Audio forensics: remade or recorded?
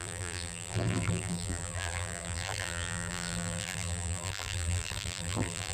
remade